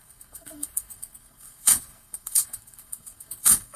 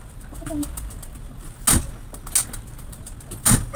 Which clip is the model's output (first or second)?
first